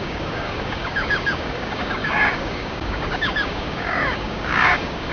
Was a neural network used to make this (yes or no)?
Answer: yes